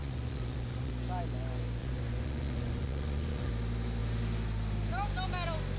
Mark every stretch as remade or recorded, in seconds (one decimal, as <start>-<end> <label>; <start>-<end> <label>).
0.0-0.9 remade; 0.9-1.8 recorded; 1.8-3.5 remade; 3.5-5.8 recorded